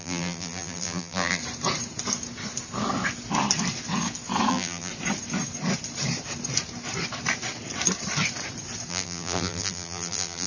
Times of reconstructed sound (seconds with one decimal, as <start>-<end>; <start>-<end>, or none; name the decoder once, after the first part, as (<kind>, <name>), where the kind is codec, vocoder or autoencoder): 0.0-1.4 (vocoder, BigVGAN v2); 4.5-4.9; 8.9-10.5